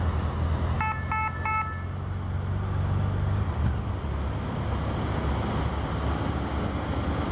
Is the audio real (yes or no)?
yes